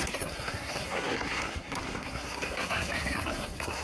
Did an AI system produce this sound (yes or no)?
yes